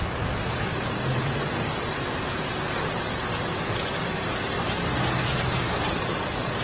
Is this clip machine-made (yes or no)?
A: yes